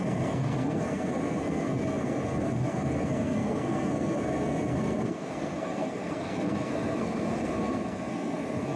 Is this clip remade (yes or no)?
yes